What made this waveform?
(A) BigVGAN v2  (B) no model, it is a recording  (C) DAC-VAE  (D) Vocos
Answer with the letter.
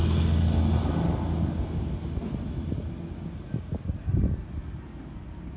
B